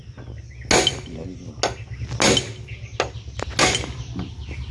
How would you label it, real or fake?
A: real